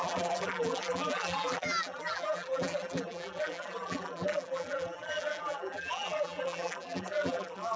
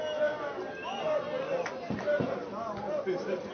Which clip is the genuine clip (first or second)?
second